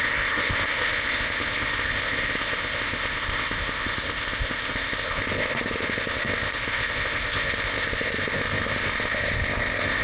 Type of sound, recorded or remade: remade